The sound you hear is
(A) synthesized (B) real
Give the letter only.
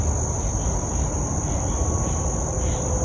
B